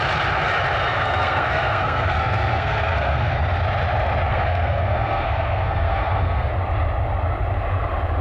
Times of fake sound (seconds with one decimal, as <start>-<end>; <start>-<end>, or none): 0.9-3.4; 4.3-6.5